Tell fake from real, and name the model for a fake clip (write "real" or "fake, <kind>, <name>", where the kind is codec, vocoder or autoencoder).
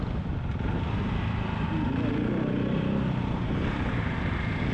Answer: real